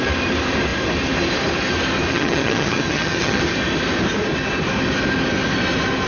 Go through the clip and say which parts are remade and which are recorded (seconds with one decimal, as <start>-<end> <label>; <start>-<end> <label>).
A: 0.0-2.1 recorded; 2.1-3.4 remade; 3.4-6.1 recorded